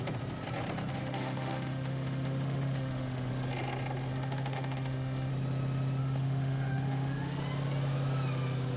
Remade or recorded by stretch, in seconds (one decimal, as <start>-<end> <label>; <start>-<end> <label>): 0.0-0.9 recorded; 0.9-3.3 remade; 3.3-4.1 recorded; 4.1-5.3 remade; 5.3-6.0 recorded; 6.0-7.4 remade; 7.4-8.8 recorded